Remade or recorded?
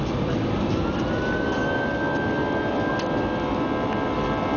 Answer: recorded